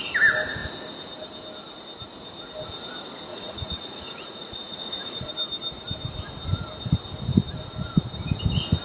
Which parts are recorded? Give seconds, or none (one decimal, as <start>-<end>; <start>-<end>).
0.0-3.3; 5.3-8.8